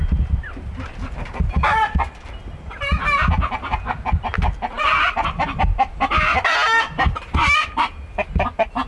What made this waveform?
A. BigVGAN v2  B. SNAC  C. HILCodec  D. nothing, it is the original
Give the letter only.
D